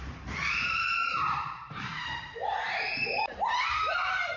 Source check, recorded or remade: remade